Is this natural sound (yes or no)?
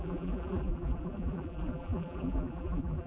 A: no